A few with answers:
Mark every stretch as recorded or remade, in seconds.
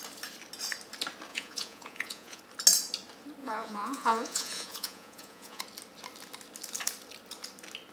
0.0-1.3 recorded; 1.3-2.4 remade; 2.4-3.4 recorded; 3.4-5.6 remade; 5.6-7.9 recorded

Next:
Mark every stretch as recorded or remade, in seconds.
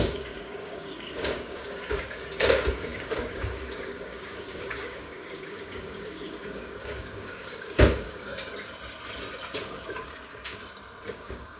0.0-8.3 remade; 8.3-9.6 recorded; 9.6-10.6 remade; 10.6-11.1 recorded; 11.1-11.6 remade